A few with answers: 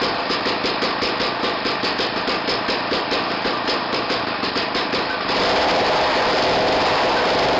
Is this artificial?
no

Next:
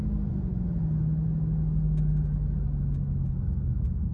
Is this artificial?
no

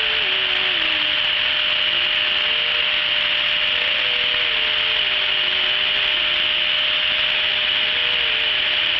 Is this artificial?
no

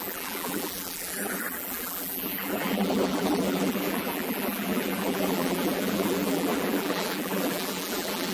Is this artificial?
yes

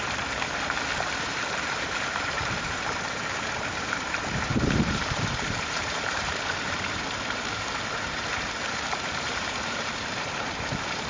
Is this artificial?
yes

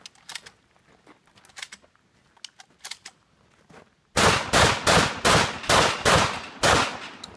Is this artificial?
no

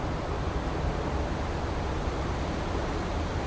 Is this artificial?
no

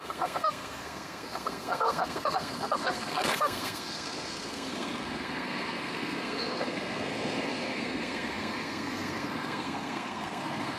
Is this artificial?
yes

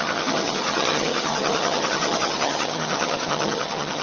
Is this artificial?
yes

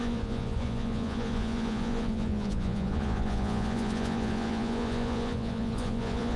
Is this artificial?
yes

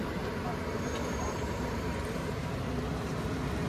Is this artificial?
yes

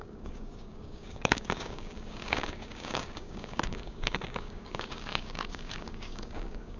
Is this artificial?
yes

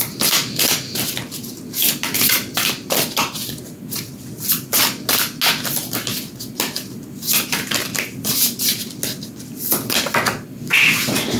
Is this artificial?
no